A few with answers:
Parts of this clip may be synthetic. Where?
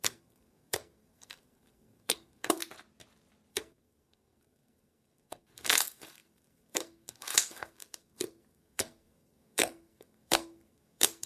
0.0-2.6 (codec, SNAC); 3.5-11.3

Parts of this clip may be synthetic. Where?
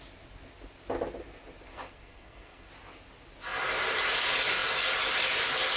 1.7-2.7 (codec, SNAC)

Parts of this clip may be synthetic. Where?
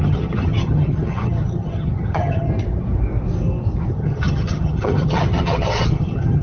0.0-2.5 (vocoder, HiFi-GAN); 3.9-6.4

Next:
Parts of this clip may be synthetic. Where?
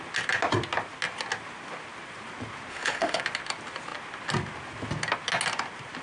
2.7-3.2 (autoencoder, DAC-VAE)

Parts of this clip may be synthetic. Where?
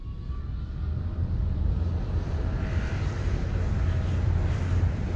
2.1-3.5 (vocoder, BigVGAN v2); 4.3-5.2